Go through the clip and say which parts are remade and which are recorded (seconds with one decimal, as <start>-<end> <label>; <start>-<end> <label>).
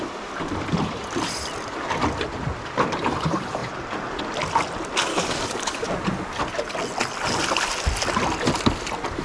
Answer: 0.0-5.1 recorded; 5.1-5.9 remade; 5.9-9.2 recorded